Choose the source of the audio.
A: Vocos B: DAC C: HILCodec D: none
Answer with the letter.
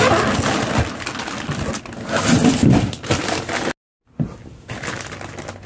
D